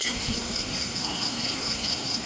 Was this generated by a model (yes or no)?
yes